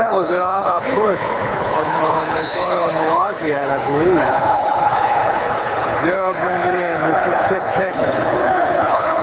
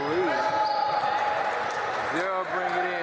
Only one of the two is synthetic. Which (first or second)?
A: first